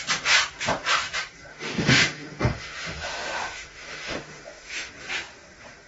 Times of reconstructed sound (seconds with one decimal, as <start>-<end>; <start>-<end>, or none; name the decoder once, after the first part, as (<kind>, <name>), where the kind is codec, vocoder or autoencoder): 1.5-4.9 (autoencoder, DAC-VAE)

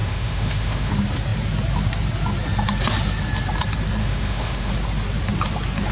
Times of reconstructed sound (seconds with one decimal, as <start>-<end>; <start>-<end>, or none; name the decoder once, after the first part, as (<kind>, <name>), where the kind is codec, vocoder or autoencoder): 0.0-0.9 (autoencoder, DAC-VAE); 4.0-4.7

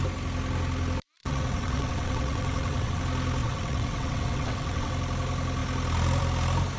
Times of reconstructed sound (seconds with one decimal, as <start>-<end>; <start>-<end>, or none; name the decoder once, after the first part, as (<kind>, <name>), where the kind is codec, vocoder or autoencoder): 1.2-3.0 (vocoder, WaveNeXt); 3.4-4.9

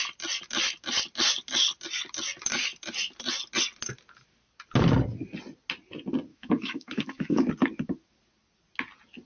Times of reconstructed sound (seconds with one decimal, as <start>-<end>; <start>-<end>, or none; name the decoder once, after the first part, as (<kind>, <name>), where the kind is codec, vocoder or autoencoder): 6.3-7.5 (autoencoder, DAC-VAE)